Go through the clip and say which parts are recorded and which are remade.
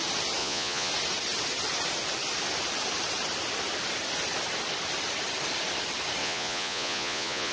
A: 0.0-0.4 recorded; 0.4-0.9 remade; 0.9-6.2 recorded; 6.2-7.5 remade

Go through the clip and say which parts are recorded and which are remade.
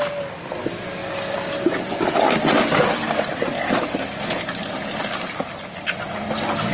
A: 0.0-6.7 recorded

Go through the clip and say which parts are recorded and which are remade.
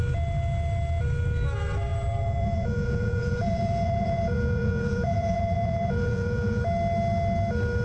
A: 0.0-1.9 recorded; 1.9-6.6 remade; 6.6-7.8 recorded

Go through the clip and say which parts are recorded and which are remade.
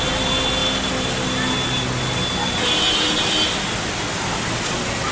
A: 0.0-5.1 recorded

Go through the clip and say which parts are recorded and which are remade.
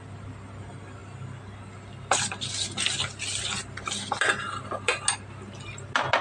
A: 0.0-6.2 recorded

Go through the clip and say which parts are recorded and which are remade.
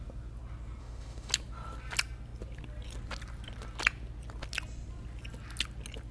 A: 0.0-0.8 recorded; 0.8-1.3 remade; 1.3-6.1 recorded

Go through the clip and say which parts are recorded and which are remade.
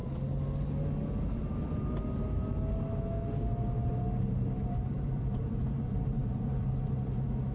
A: 0.0-4.2 recorded; 4.2-7.5 remade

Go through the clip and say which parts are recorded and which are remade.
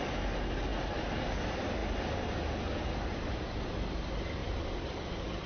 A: 0.0-4.4 recorded; 4.4-5.1 remade; 5.1-5.5 recorded